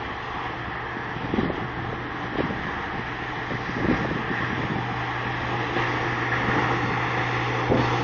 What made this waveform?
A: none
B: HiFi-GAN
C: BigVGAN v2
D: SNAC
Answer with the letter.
A